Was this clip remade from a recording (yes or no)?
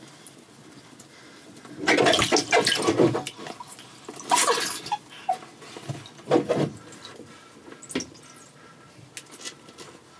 no